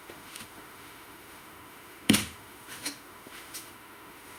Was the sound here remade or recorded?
remade